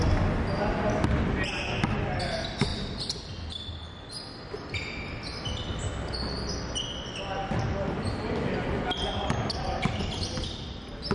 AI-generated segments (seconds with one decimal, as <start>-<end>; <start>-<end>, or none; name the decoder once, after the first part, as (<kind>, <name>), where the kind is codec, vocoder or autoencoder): none